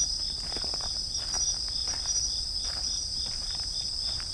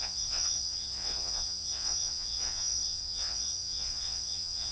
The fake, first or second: second